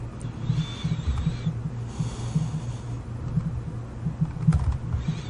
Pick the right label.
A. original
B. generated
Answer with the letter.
A